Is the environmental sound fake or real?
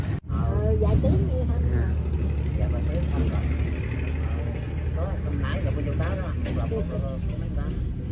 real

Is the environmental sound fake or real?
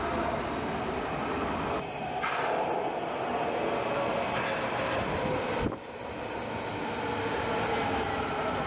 real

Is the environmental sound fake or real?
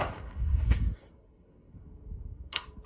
fake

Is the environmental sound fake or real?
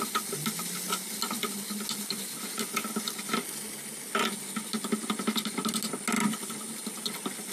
real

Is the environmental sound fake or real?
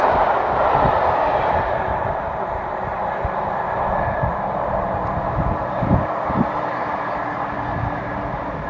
real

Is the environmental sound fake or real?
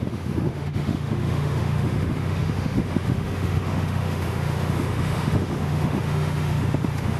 fake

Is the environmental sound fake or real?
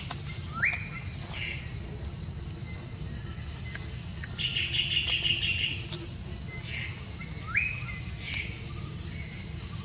real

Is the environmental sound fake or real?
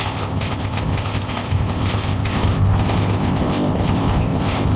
fake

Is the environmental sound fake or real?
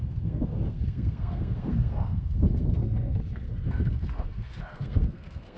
fake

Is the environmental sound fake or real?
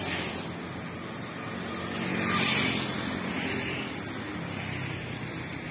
real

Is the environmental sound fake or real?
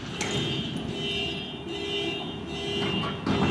real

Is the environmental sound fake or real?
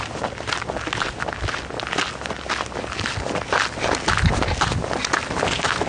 real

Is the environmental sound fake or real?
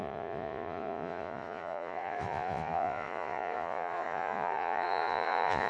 fake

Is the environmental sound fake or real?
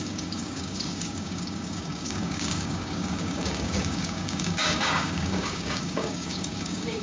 fake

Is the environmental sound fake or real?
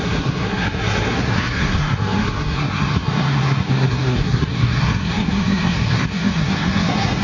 fake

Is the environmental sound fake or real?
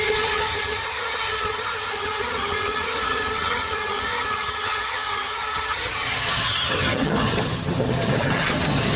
fake